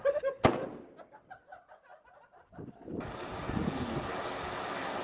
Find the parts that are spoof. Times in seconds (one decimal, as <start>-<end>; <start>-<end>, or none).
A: none